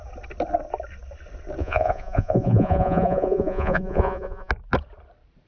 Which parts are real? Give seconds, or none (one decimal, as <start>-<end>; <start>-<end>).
0.0-1.6; 4.5-5.5